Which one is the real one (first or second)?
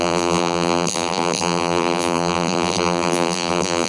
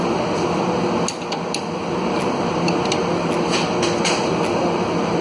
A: second